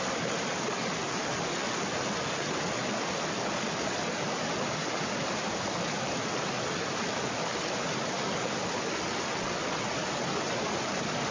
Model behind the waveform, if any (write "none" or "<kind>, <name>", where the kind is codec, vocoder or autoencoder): none